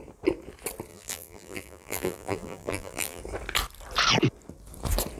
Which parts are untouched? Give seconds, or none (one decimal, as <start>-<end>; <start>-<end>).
0.0-0.9; 3.2-5.2